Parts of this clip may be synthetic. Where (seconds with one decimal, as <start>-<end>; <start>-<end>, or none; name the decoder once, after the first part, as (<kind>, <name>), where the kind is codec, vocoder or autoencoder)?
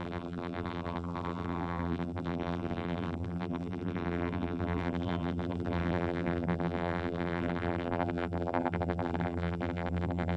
0.0-10.4 (vocoder, BigVGAN v2)